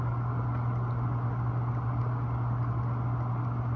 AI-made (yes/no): no